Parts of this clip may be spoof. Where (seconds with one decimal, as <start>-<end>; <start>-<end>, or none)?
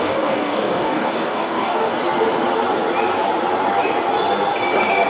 0.0-1.9